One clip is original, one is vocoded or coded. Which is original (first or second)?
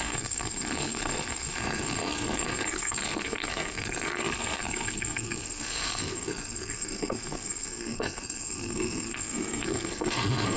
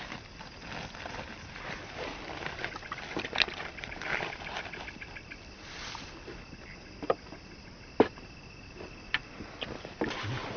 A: second